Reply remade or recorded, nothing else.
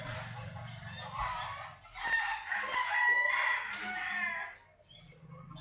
recorded